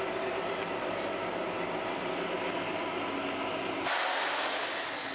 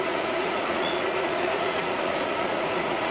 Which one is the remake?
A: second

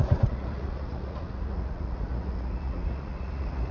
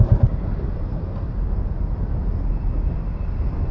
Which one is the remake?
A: first